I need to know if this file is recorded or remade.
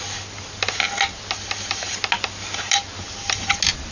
recorded